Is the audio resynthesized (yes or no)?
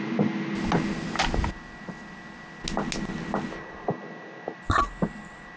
no